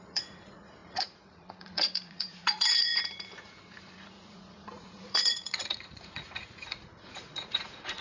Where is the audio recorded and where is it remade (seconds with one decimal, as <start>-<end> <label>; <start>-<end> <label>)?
0.0-8.0 remade